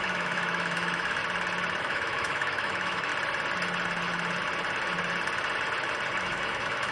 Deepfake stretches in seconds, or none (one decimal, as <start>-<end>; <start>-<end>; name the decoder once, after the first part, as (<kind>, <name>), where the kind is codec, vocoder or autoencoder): 0.0-1.2 (autoencoder, DAC-VAE); 1.8-3.1; 6.2-6.9